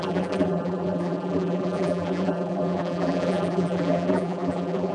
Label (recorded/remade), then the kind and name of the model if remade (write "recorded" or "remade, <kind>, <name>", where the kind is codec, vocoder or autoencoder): remade, vocoder, BigVGAN v2